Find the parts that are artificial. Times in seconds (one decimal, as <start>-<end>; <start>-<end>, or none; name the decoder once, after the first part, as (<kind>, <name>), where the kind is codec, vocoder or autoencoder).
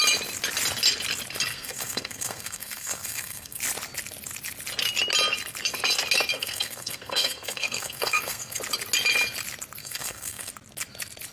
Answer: 1.5-3.6 (codec, SNAC); 6.3-8.6; 9.8-10.5